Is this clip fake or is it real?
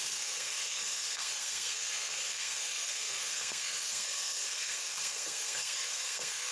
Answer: fake